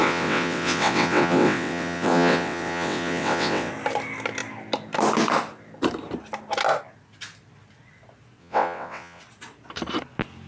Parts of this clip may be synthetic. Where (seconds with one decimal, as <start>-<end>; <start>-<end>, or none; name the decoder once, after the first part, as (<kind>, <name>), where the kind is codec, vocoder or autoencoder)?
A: 0.0-3.7 (vocoder, WaveNeXt); 8.4-9.2